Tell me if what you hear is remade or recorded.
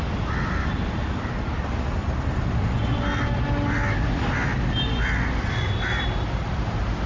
recorded